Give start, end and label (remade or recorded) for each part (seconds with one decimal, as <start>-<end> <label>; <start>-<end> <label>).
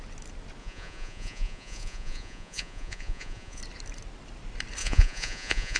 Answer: 0.0-0.6 recorded; 0.6-3.6 remade; 3.6-4.8 recorded; 4.8-5.8 remade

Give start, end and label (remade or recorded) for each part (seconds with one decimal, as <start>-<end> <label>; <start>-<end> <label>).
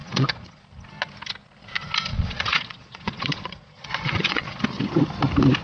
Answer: 0.0-0.6 remade; 0.6-2.1 recorded; 2.1-4.6 remade; 4.6-5.6 recorded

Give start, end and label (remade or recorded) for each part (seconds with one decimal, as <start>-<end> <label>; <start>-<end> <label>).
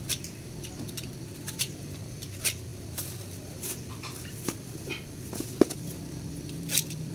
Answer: 0.0-7.1 recorded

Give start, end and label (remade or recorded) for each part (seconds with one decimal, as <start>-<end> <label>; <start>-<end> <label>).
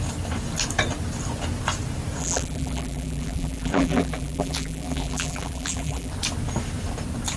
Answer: 0.0-2.2 recorded; 2.2-6.1 remade; 6.1-7.4 recorded